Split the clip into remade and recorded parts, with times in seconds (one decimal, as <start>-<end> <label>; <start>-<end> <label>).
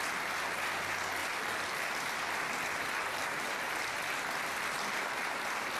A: 0.0-5.8 recorded